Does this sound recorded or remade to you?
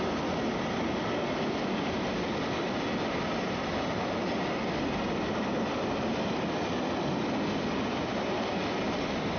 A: recorded